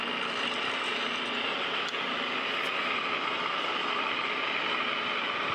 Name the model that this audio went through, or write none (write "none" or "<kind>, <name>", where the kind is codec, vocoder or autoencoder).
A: none